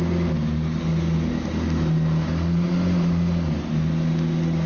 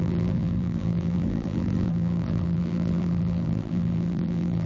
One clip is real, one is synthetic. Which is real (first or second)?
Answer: first